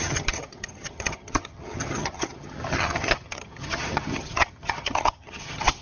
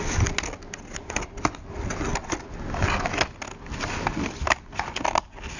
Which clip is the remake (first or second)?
first